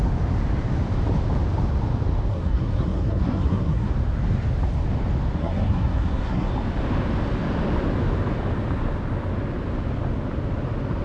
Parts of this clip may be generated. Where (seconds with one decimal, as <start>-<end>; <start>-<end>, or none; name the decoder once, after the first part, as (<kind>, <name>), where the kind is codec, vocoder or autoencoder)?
2.3-3.9 (codec, SNAC); 5.4-6.5